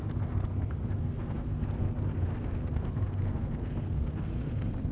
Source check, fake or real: fake